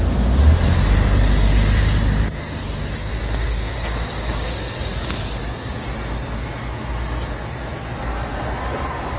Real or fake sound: real